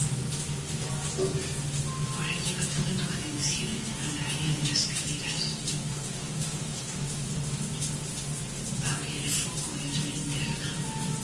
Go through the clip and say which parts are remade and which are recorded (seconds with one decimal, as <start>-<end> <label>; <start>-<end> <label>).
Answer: 0.0-2.3 recorded; 2.3-7.3 remade; 7.3-11.2 recorded